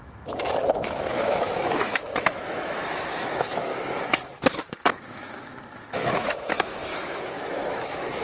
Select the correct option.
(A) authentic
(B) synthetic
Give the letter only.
B